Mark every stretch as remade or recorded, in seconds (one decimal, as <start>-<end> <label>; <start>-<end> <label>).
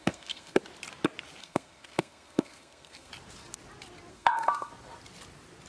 0.0-0.6 remade; 0.6-1.4 recorded; 1.4-3.1 remade; 3.1-4.1 recorded; 4.1-4.7 remade; 4.7-5.7 recorded